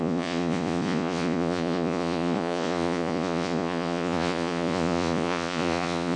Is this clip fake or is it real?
fake